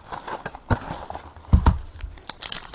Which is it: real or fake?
real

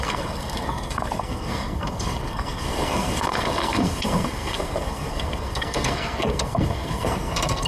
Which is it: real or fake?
fake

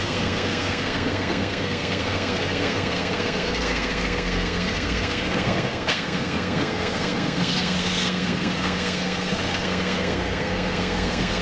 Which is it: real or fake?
fake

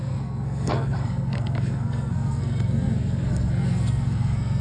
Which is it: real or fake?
fake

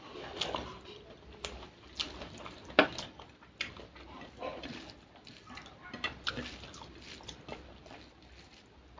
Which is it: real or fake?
real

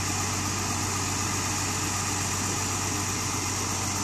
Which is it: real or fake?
real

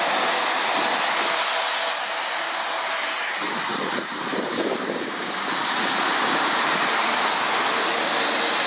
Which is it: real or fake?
real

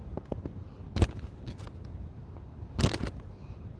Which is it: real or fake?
real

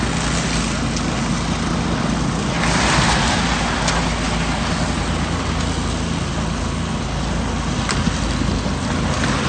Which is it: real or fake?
real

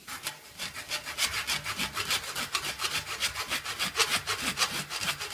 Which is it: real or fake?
real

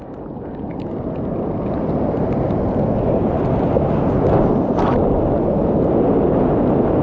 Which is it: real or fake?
real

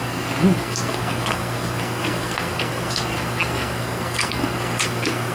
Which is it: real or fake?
fake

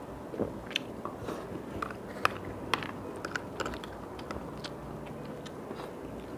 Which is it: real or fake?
real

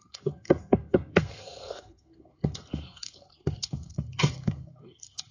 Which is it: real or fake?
fake